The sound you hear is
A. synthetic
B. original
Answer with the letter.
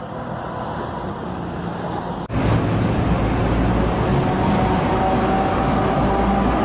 B